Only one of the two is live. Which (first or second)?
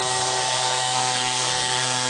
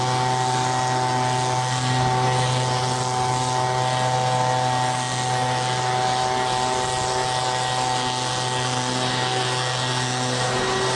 second